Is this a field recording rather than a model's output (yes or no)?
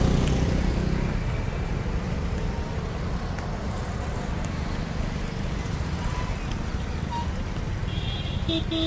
yes